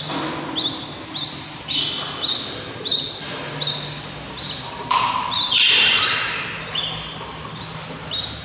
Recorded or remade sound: recorded